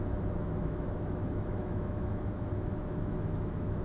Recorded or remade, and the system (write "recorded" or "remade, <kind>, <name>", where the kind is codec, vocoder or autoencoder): remade, autoencoder, DAC-VAE